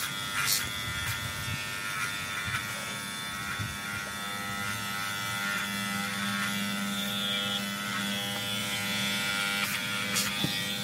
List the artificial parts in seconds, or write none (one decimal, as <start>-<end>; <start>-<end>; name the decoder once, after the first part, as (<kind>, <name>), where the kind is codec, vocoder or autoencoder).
8.6-9.3 (vocoder, Vocos)